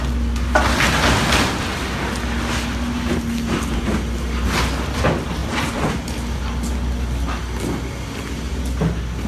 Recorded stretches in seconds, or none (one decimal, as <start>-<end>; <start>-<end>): 0.0-5.4; 5.9-9.3